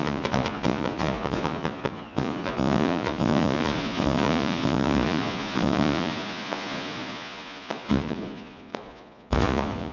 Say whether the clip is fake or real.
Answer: fake